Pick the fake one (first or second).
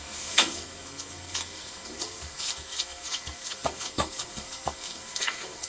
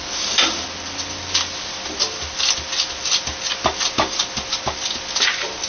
first